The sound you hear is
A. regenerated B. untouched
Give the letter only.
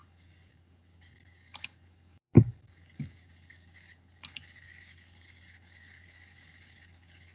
A